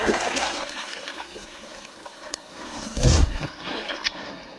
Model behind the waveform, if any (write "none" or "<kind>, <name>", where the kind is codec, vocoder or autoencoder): codec, SNAC